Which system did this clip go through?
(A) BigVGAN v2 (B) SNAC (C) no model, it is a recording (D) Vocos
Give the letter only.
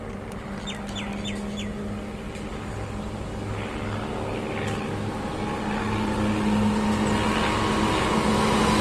C